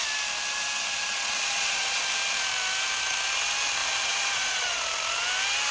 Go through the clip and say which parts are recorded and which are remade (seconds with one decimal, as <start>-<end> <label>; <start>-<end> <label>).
0.0-0.8 recorded; 0.8-2.0 remade; 2.0-3.8 recorded; 3.8-4.8 remade; 4.8-5.7 recorded